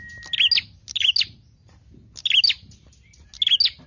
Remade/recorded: recorded